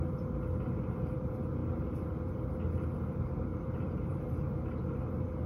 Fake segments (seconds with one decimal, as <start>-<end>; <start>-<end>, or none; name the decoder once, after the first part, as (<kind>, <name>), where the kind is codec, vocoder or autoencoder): 1.6-2.3 (vocoder, BigVGAN v2); 3.5-4.4